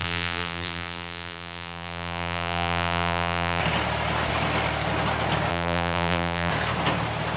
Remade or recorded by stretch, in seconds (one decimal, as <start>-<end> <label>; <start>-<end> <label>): 0.0-3.6 remade; 3.6-5.5 recorded; 5.5-6.5 remade; 6.5-7.4 recorded